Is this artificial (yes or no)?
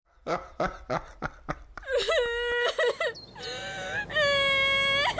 no